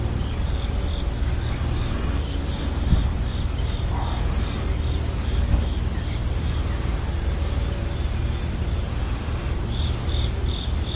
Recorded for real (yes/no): yes